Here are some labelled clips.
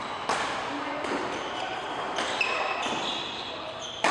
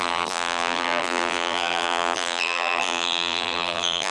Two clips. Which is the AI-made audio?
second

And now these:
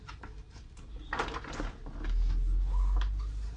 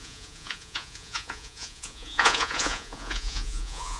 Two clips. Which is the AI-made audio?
second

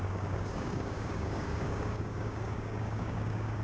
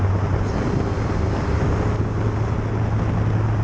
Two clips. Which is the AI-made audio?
first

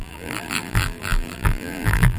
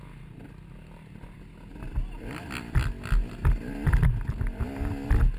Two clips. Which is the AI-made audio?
first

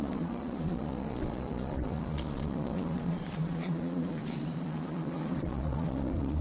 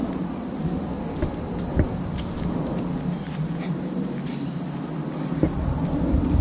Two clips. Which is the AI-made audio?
first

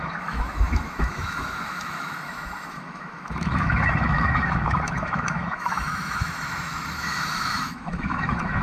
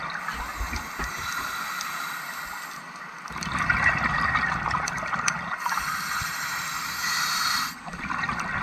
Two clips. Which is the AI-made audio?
first